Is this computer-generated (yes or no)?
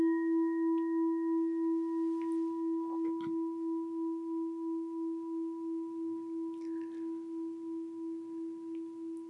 no